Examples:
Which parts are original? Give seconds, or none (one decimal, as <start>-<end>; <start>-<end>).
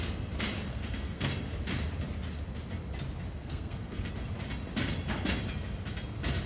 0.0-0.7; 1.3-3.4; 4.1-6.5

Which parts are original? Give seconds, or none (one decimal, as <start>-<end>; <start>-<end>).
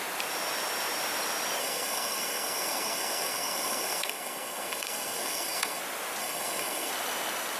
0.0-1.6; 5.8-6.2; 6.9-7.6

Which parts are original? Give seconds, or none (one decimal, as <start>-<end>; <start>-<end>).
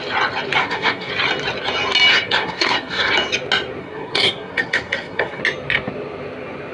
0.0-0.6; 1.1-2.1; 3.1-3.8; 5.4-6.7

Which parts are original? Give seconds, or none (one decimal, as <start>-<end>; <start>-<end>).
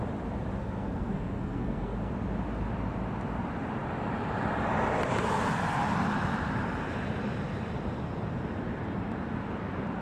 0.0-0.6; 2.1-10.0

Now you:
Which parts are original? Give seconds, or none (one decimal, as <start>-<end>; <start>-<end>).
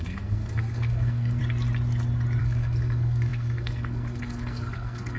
1.4-2.4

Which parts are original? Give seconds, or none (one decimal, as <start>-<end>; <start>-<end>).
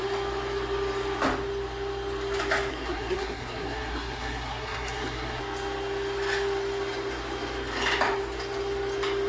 0.0-2.7; 5.4-9.3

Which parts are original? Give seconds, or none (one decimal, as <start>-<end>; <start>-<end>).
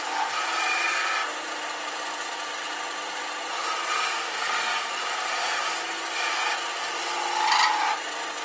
0.0-4.1; 4.9-8.4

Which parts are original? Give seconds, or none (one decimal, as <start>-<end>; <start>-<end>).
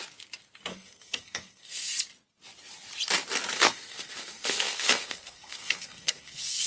0.0-0.7; 1.9-3.5